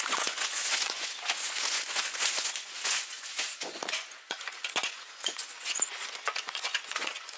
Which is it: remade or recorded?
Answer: remade